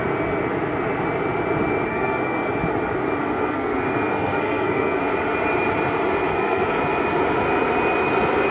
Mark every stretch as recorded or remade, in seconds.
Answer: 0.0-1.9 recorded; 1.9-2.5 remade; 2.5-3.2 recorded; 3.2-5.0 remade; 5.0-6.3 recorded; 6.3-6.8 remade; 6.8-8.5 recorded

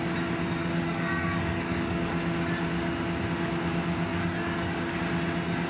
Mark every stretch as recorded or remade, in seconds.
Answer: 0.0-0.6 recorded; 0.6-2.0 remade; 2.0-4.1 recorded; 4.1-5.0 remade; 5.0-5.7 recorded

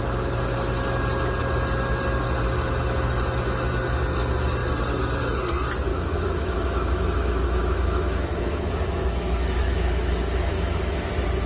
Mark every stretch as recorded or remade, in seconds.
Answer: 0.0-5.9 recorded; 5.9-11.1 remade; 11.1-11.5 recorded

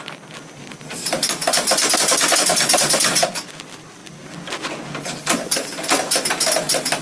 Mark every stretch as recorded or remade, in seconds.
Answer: 0.0-7.0 recorded

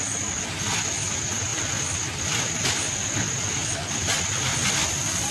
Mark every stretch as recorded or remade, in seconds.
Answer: 0.0-5.3 recorded

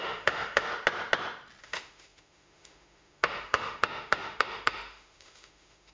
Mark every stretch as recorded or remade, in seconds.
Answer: 0.0-0.7 remade; 0.7-1.6 recorded; 1.6-5.9 remade

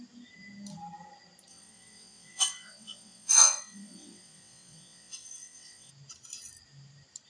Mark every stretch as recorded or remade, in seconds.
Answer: 0.0-1.5 recorded; 1.5-5.9 remade; 5.9-7.3 recorded

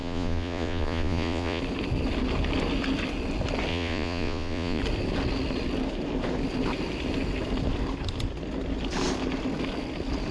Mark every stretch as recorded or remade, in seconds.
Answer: 0.0-1.6 remade; 1.6-3.7 recorded; 3.7-4.8 remade; 4.8-10.3 recorded